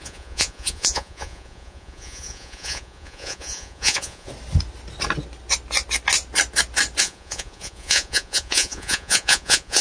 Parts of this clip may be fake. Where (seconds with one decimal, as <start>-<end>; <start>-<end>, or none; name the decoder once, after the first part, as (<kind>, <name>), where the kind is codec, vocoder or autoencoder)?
0.0-4.3 (vocoder, Vocos); 7.0-9.8